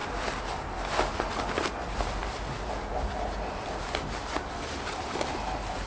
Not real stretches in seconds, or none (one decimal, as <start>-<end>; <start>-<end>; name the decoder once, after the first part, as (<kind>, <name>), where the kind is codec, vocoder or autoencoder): none